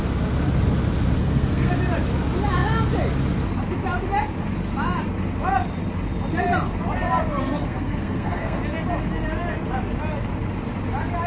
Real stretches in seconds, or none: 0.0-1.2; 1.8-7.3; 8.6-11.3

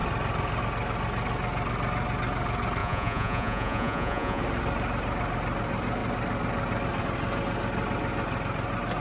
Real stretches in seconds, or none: 0.0-2.8; 4.4-9.0

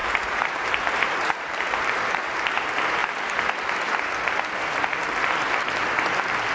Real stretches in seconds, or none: 1.9-6.5

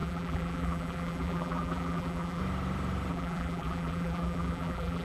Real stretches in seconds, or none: 2.4-3.1

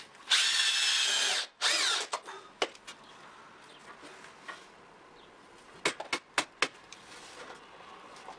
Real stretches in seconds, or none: 0.0-8.4